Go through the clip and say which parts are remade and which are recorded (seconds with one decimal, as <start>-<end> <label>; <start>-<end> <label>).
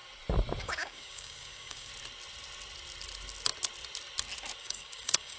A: 0.0-0.6 recorded; 0.6-1.9 remade; 1.9-4.6 recorded; 4.6-5.4 remade